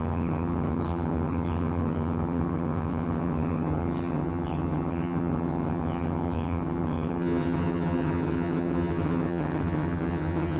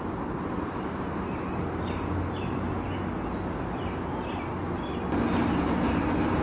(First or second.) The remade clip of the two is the first